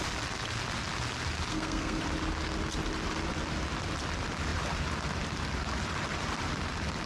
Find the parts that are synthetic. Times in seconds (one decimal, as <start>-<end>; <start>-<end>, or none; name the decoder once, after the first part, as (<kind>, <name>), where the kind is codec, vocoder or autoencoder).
1.5-2.0 (codec, SNAC)